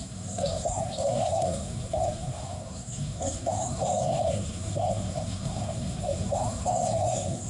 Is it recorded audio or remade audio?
remade